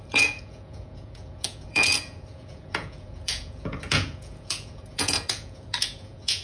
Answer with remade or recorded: remade